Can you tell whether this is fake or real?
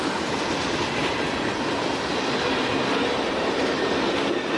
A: real